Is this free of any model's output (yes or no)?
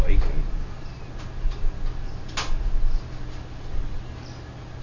yes